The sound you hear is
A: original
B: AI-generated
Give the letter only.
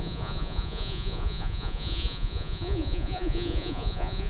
B